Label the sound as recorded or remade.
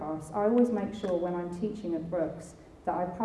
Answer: recorded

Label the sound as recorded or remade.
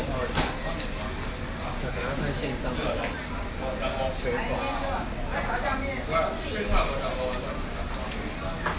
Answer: recorded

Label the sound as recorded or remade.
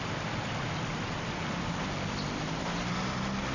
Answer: recorded